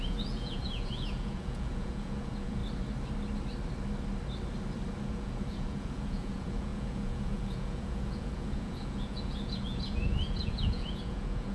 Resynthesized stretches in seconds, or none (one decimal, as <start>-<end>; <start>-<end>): 0.0-2.6; 5.0-11.5